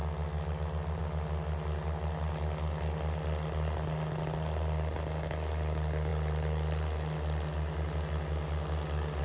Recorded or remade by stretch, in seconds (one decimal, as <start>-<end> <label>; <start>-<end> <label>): 0.0-9.2 recorded